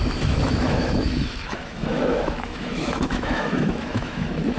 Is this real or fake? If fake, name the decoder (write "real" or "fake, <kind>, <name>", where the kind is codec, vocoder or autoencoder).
fake, autoencoder, DAC-VAE